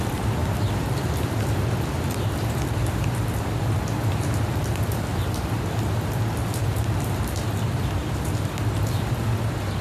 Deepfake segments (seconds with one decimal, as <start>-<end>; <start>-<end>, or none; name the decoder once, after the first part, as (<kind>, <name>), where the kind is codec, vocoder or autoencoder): 0.0-9.8 (vocoder, BigVGAN v2)